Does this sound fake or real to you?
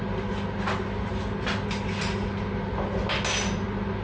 real